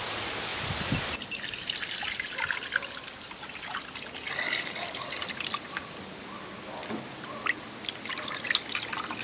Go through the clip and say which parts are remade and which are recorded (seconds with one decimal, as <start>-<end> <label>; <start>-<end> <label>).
0.0-9.2 recorded